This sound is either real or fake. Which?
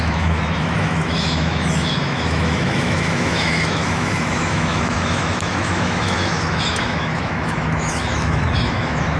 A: fake